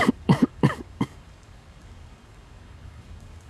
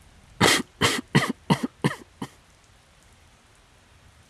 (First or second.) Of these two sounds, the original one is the second